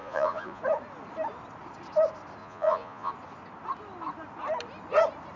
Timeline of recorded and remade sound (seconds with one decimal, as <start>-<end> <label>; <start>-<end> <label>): 0.0-0.6 remade; 0.6-2.4 recorded; 2.4-3.1 remade; 3.1-5.4 recorded